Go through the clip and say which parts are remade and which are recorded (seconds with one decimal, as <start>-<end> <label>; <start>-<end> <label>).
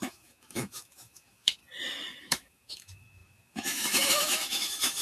0.0-1.6 remade; 1.6-2.2 recorded; 2.2-5.0 remade